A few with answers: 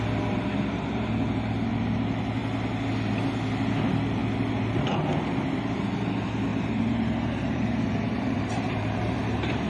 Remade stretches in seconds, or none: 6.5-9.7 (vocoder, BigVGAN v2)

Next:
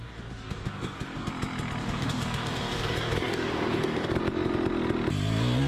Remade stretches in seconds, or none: 0.0-1.3 (codec, DAC); 1.8-4.1